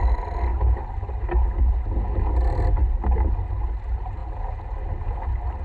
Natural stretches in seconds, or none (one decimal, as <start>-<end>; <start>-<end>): 0.0-5.6